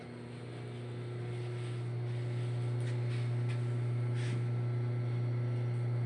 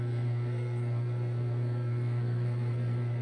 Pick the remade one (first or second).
second